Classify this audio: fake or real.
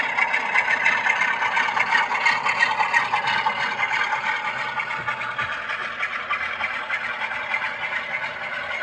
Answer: real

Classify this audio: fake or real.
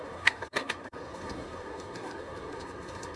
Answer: fake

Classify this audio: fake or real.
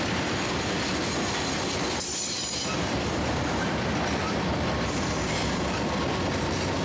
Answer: fake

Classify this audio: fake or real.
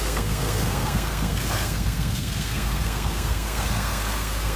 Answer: fake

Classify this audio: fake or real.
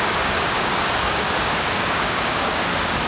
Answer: fake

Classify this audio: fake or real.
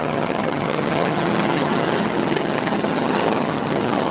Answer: fake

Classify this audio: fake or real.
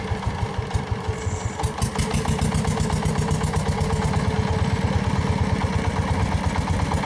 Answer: real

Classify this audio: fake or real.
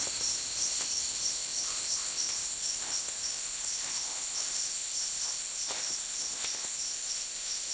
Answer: fake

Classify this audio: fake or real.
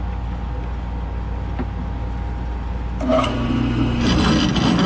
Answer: real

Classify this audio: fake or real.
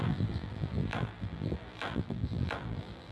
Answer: fake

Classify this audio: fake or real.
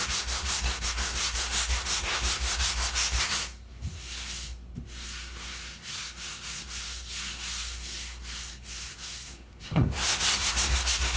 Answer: fake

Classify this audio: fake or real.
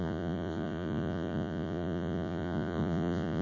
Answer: fake